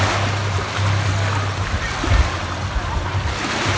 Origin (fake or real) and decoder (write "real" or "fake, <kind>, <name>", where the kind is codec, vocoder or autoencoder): real